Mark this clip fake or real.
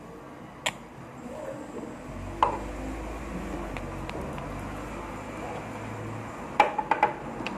real